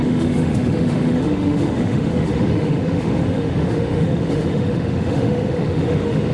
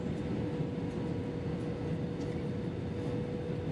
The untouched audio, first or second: second